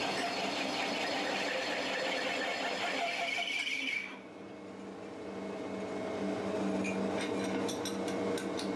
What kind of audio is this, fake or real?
real